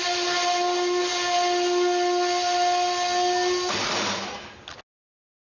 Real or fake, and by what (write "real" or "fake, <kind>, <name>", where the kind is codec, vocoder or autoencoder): real